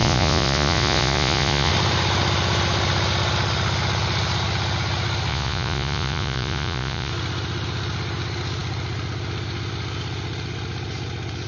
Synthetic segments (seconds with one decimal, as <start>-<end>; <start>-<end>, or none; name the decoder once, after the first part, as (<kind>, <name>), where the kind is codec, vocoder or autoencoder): 0.0-1.7 (vocoder, Vocos); 5.3-7.1